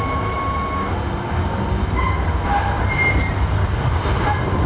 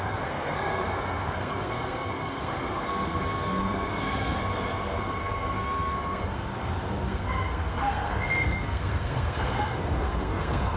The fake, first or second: second